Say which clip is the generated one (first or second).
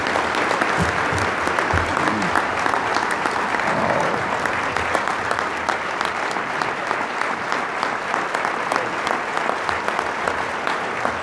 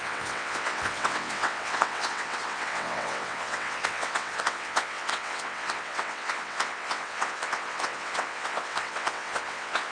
second